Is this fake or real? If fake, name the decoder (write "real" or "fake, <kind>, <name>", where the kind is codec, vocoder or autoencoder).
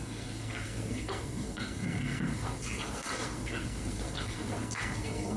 fake, codec, SNAC